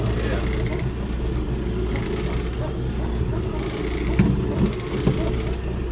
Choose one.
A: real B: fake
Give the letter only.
A